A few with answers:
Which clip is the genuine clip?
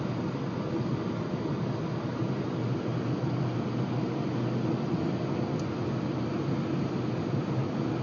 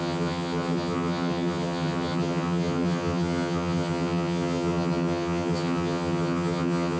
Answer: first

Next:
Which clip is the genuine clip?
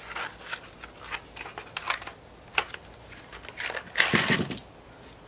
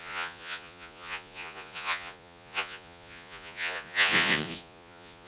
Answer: first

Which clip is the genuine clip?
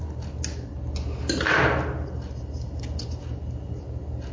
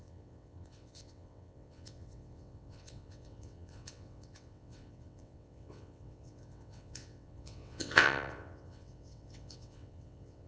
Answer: first